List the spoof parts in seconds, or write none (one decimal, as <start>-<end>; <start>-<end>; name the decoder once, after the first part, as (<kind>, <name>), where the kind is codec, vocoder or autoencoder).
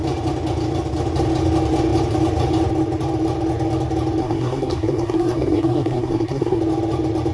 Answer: 4.2-6.6 (codec, SNAC)